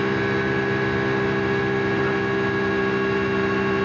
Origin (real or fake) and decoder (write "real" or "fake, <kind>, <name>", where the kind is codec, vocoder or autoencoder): real